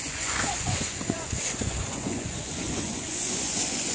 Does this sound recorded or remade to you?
remade